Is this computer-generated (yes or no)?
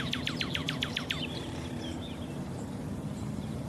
yes